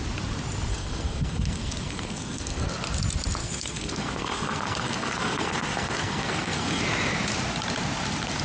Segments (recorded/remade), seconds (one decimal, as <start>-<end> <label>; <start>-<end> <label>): 0.0-0.7 recorded; 0.7-2.7 remade; 2.7-3.4 recorded; 3.4-6.8 remade; 6.8-8.4 recorded